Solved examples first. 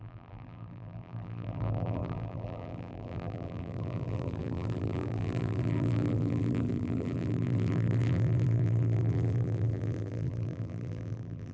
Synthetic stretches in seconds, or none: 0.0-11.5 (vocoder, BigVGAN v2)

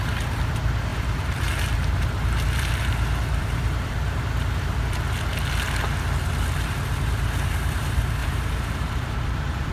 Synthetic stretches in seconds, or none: 0.9-4.2 (vocoder, BigVGAN v2); 8.2-9.7

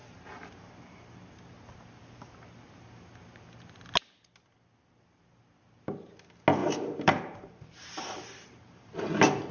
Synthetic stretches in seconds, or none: 0.0-1.6 (vocoder, BigVGAN v2); 6.6-8.9

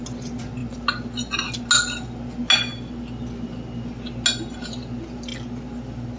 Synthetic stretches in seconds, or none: none